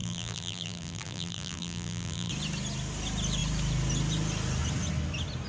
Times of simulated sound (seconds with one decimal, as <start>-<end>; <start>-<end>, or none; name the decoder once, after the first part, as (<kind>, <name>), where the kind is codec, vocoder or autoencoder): 0.0-2.3 (vocoder, BigVGAN v2)